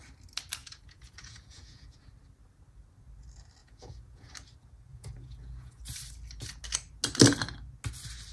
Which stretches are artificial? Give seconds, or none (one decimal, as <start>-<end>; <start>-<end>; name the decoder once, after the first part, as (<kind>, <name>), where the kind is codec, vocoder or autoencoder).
0.6-2.1 (vocoder, Vocos); 3.6-4.3; 4.9-5.8